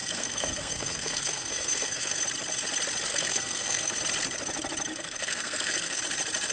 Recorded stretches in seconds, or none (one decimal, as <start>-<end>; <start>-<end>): 2.2-3.1; 4.0-4.9; 6.0-6.5